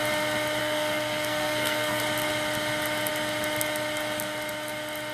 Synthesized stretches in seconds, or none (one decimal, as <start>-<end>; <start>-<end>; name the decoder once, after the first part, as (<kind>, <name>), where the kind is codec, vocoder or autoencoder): 0.6-2.0 (codec, SNAC)